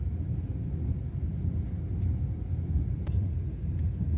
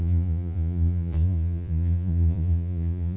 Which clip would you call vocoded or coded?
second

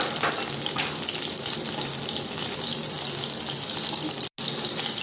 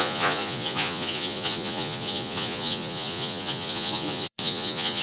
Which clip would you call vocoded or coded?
second